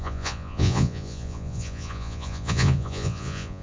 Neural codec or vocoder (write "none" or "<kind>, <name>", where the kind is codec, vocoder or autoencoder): vocoder, Vocos